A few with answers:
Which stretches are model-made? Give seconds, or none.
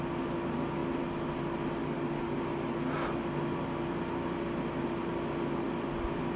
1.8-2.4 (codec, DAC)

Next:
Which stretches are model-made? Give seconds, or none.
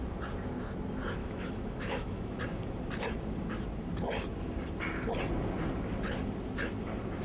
1.2-2.4 (autoencoder, DAC-VAE)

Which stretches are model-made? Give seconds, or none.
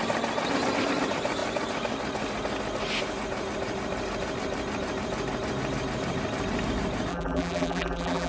7.1-8.3 (vocoder, BigVGAN v2)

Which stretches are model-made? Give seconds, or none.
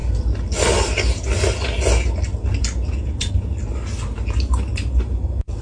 0.0-0.5 (vocoder, BigVGAN v2); 2.3-3.3